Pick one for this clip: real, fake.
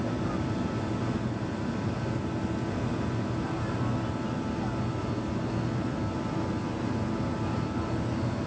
real